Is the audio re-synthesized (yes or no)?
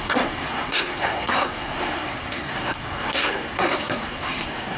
yes